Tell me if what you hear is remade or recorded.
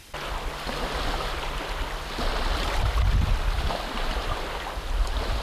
recorded